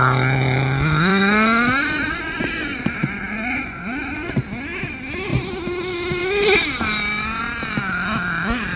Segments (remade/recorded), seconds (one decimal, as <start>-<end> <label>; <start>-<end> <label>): 0.0-1.1 recorded; 1.1-4.3 remade; 4.3-8.8 recorded